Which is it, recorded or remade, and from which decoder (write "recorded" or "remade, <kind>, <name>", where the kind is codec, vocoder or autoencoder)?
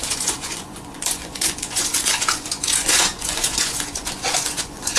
remade, vocoder, Vocos